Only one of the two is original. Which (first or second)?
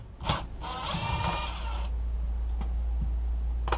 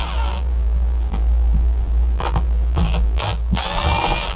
first